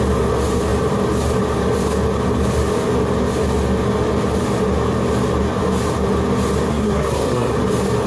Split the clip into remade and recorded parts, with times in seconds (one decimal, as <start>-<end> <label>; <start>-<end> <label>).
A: 0.0-6.7 recorded; 6.7-7.5 remade; 7.5-8.1 recorded